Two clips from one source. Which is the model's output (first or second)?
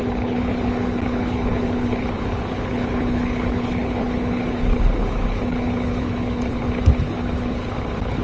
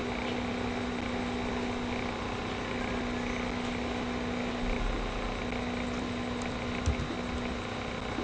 first